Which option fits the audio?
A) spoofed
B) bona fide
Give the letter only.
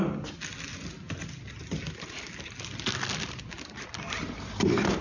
B